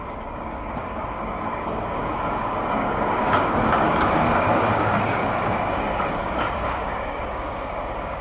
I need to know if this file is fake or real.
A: fake